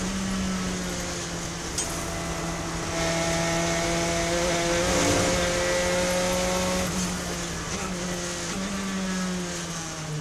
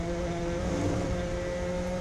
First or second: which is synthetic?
second